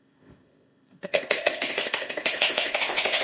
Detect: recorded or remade remade